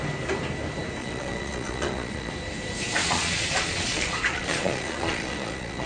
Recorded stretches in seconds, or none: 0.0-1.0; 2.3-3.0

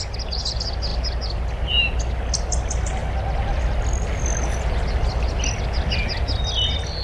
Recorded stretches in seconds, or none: 0.0-7.0

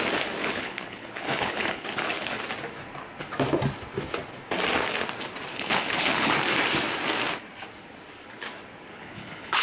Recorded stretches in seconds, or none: 0.0-0.4; 2.4-5.5; 6.3-8.9

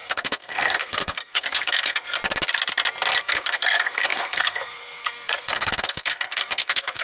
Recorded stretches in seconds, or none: 2.2-3.2

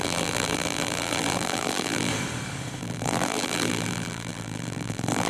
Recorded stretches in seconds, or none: 2.1-2.8

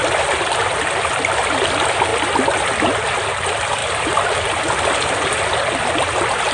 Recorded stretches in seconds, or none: 0.0-6.5